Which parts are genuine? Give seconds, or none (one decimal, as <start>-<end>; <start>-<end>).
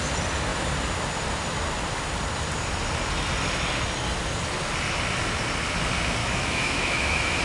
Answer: 0.0-6.2